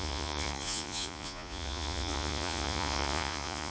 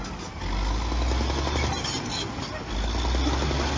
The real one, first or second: second